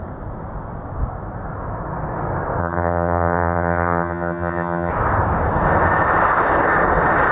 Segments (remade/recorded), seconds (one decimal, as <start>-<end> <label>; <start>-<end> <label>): 0.0-2.6 recorded; 2.6-4.9 remade; 4.9-7.3 recorded